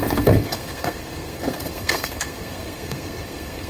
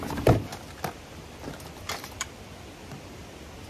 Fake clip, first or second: first